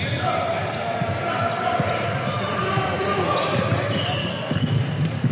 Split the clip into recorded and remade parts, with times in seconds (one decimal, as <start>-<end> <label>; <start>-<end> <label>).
0.0-4.3 recorded; 4.3-4.8 remade; 4.8-5.3 recorded